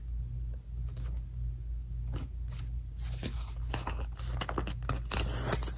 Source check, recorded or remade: recorded